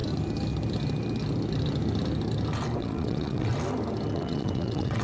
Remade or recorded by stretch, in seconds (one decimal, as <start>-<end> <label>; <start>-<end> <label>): 0.0-2.8 recorded; 2.8-3.5 remade; 3.5-4.1 recorded; 4.1-5.0 remade